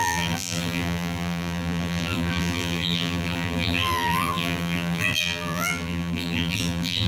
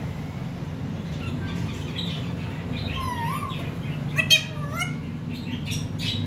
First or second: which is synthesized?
first